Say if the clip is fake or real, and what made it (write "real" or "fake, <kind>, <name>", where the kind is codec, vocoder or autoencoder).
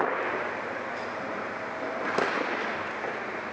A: real